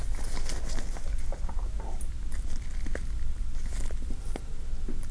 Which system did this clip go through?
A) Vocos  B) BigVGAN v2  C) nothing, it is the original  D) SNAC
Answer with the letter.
C